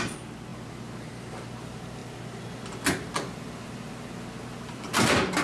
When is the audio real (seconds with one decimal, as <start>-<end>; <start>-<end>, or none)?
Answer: 0.0-5.4